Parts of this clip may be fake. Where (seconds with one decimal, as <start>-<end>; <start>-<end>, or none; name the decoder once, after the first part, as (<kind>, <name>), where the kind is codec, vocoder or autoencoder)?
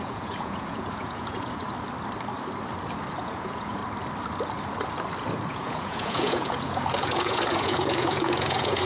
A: 0.0-1.6 (vocoder, Vocos); 3.2-3.8; 5.5-8.9